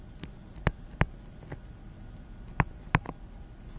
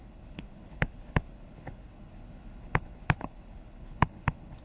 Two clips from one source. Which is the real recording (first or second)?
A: first